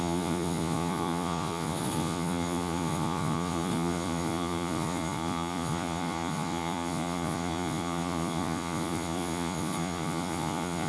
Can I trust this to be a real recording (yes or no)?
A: no